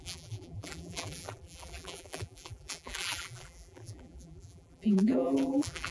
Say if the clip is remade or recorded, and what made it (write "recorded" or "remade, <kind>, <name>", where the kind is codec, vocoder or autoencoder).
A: remade, vocoder, BigVGAN v2